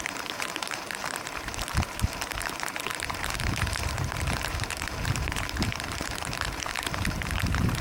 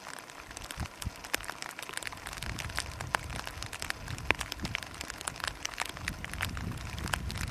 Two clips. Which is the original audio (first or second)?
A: second